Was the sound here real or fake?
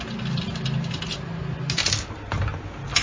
real